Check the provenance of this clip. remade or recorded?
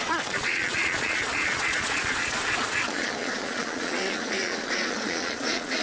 remade